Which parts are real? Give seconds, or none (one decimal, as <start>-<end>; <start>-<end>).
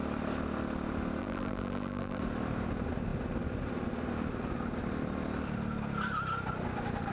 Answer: 0.0-1.2; 2.2-7.1